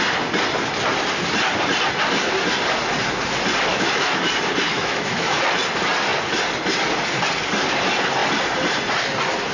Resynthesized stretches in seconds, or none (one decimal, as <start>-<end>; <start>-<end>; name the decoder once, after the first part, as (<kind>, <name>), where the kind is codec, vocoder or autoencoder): 3.7-4.3 (autoencoder, DAC-VAE); 4.7-5.4